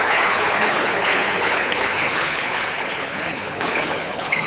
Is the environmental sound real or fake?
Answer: fake